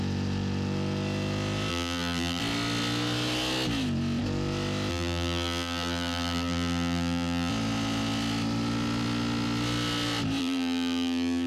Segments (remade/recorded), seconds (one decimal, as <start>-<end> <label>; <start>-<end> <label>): 0.0-1.7 recorded; 1.7-2.4 remade; 2.4-4.9 recorded; 4.9-7.5 remade; 7.5-10.4 recorded; 10.4-11.5 remade